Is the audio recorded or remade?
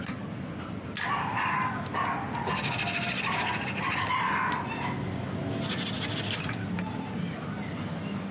recorded